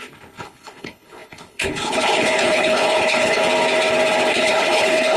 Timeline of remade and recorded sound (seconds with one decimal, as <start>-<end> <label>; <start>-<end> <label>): 0.0-3.4 remade; 3.4-4.3 recorded; 4.3-5.2 remade